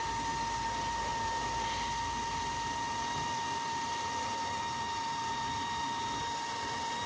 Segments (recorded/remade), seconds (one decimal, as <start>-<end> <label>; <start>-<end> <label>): 0.0-7.1 recorded